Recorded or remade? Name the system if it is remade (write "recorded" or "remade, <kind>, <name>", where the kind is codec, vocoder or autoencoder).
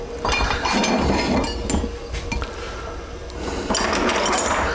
recorded